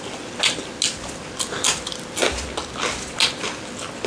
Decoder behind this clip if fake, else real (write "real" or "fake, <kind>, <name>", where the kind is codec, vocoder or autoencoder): real